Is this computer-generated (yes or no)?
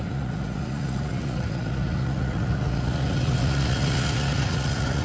yes